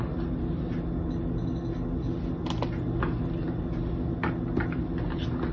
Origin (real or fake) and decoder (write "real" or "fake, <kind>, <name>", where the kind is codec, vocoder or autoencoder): real